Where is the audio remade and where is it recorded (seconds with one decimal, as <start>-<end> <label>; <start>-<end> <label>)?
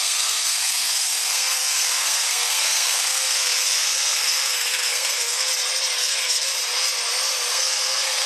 0.0-5.5 remade; 5.5-6.0 recorded; 6.0-6.5 remade; 6.5-7.5 recorded; 7.5-8.3 remade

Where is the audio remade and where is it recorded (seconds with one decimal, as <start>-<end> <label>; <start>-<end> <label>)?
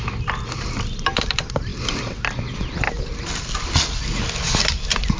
0.0-5.2 recorded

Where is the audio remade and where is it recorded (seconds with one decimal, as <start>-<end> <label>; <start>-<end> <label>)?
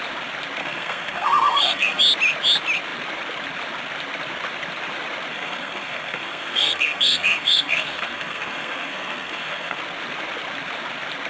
0.0-0.6 recorded; 0.6-2.0 remade; 2.0-5.3 recorded; 5.3-9.8 remade; 9.8-11.3 recorded